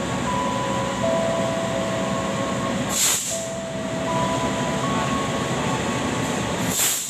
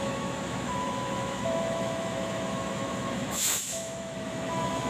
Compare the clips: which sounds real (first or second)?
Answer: first